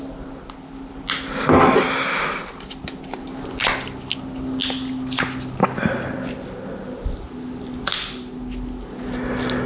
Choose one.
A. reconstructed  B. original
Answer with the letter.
B